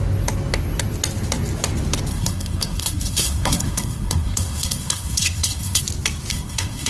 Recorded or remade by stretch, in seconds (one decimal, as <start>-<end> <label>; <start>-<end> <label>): 0.0-2.1 recorded; 2.1-5.8 remade; 5.8-6.3 recorded; 6.3-6.9 remade